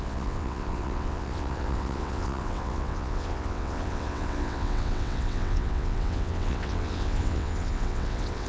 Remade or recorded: remade